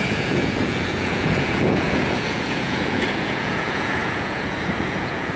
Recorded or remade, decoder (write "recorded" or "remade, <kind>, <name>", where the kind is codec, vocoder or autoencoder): remade, vocoder, Vocos